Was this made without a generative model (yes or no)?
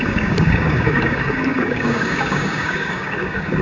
no